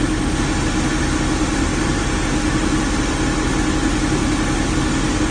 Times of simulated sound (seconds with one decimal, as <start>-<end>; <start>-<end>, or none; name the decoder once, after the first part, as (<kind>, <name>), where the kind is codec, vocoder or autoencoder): none